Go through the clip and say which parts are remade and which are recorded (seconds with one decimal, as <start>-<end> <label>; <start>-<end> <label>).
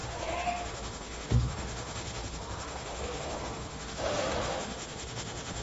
0.0-5.6 remade